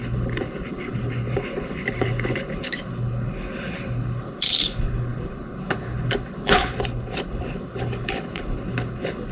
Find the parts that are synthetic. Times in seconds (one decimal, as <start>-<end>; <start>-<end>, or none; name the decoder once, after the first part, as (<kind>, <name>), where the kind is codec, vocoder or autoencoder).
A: 0.0-9.3 (codec, HILCodec)